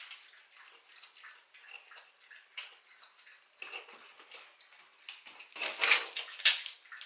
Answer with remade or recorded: recorded